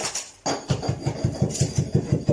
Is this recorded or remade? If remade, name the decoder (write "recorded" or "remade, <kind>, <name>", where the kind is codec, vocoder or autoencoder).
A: recorded